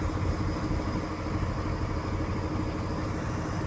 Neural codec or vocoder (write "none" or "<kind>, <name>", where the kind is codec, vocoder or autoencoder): none